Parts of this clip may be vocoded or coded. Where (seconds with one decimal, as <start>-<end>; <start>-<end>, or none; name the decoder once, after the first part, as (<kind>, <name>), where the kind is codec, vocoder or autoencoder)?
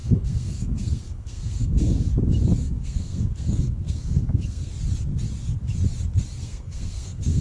0.0-2.1 (codec, SNAC); 2.6-4.7; 6.4-7.4